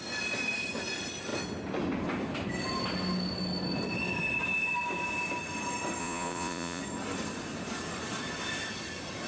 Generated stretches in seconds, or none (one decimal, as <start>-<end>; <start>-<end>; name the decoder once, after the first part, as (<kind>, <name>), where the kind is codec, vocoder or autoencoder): 6.0-6.8 (vocoder, Vocos)